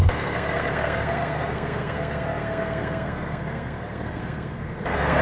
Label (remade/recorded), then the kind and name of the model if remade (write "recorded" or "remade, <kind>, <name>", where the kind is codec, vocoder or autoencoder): remade, codec, SNAC